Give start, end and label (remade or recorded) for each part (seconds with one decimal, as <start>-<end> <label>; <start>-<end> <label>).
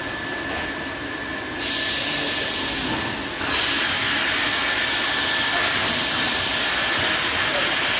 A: 0.0-8.0 recorded